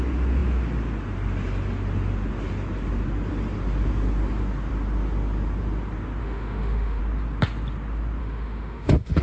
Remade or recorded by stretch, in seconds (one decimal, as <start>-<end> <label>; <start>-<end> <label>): 0.0-6.2 recorded; 6.2-7.0 remade; 7.0-8.2 recorded; 8.2-9.2 remade